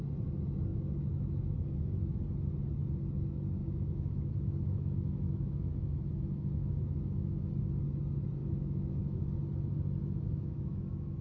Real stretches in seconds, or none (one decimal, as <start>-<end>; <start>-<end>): 0.0-0.7; 2.2-3.6; 7.5-8.4; 9.2-10.0